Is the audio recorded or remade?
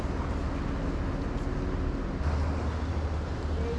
recorded